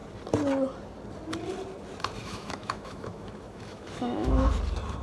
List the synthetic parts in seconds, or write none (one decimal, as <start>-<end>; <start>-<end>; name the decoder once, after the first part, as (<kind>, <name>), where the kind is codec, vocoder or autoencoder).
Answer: 2.2-4.5 (autoencoder, DAC-VAE)